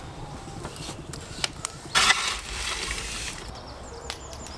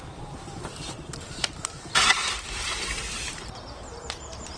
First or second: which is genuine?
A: first